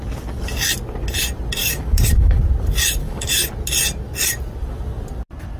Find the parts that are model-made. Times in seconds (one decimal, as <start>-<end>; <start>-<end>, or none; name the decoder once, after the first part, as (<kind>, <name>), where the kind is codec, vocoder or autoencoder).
1.6-2.4 (codec, DAC); 3.0-3.5